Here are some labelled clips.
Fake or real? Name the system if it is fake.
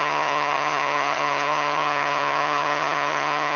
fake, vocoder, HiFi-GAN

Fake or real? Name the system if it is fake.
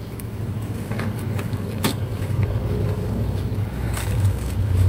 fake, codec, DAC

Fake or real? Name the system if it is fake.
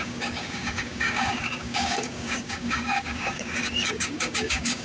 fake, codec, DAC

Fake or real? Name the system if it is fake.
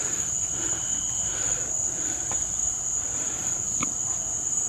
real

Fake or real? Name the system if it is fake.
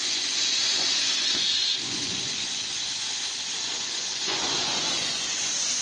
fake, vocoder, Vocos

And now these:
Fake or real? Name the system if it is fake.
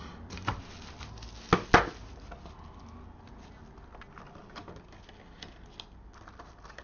real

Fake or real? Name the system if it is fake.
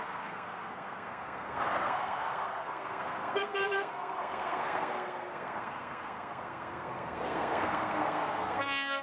fake, codec, SNAC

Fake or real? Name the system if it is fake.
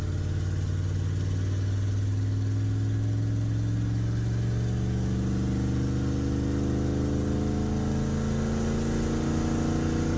real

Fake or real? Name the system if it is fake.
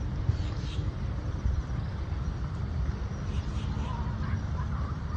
fake, vocoder, BigVGAN v2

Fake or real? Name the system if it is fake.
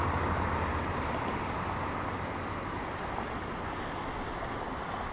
real